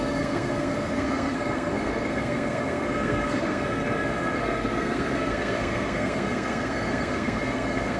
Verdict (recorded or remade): remade